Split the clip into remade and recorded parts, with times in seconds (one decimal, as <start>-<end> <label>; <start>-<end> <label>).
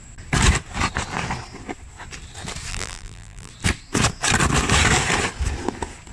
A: 0.0-2.7 recorded; 2.7-3.5 remade; 3.5-6.1 recorded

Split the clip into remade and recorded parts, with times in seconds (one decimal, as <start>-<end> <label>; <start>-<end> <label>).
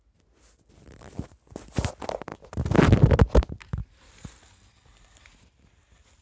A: 0.0-6.2 recorded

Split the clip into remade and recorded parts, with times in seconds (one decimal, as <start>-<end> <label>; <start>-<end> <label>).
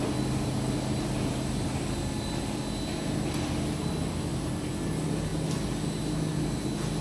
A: 0.0-7.0 recorded